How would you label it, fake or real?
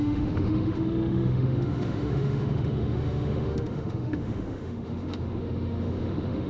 fake